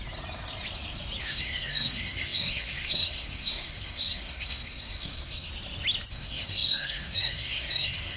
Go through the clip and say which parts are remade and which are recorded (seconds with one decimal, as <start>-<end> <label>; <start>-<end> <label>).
0.0-1.2 recorded; 1.2-5.5 remade; 5.5-6.1 recorded; 6.1-8.2 remade